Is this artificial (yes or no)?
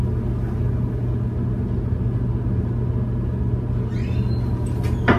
no